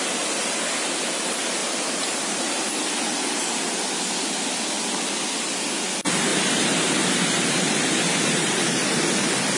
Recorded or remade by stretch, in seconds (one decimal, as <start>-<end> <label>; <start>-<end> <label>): 0.0-1.6 recorded; 1.6-2.6 remade; 2.6-6.3 recorded; 6.3-9.0 remade; 9.0-9.6 recorded